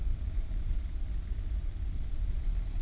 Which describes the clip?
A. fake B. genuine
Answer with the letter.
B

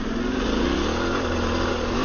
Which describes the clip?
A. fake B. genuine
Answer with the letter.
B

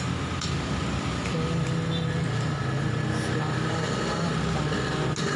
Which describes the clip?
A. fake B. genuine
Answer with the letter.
B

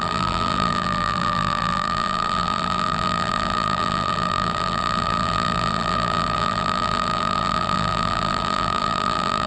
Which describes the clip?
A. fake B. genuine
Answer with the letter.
A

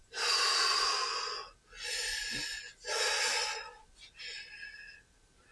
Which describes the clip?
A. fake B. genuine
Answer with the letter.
B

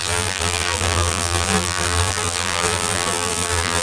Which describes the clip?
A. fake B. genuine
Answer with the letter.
A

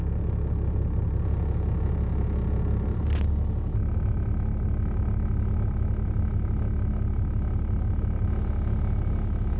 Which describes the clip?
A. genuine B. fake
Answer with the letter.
A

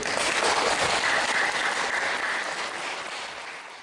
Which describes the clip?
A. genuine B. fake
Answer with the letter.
A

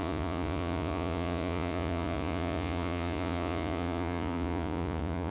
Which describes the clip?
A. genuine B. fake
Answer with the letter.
B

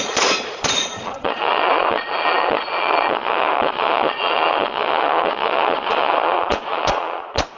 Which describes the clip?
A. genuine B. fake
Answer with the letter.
B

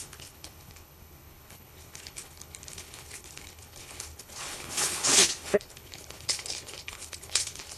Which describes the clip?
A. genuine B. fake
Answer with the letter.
B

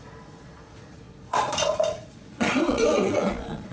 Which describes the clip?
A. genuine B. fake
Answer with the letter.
B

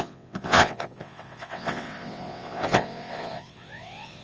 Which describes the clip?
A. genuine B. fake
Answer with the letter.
B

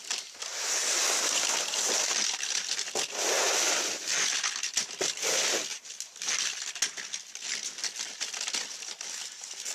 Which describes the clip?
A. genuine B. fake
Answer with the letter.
A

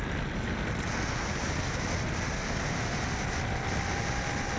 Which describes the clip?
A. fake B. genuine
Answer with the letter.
B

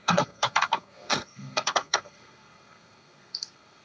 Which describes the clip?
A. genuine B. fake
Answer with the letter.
B